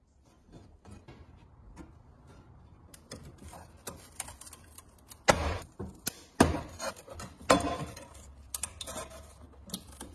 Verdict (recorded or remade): recorded